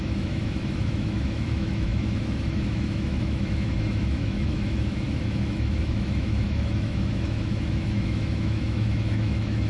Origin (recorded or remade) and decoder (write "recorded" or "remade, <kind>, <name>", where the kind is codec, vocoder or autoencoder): remade, autoencoder, DAC-VAE